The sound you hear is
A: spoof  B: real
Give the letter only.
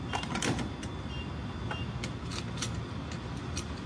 B